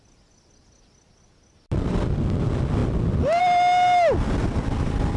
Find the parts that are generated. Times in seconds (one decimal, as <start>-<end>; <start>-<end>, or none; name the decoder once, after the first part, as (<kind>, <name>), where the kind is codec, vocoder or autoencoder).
none